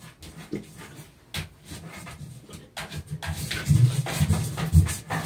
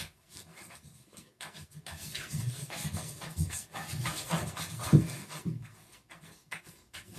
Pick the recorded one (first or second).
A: first